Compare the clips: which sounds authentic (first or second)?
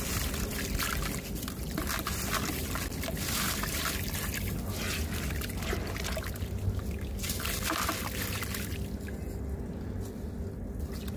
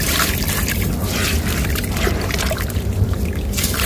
first